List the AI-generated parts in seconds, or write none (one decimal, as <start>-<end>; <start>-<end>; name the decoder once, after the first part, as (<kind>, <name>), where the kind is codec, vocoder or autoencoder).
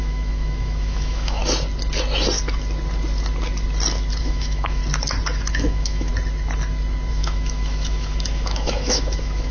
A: 0.0-1.4 (autoencoder, DAC-VAE); 4.2-4.8; 5.5-6.1; 7.1-9.5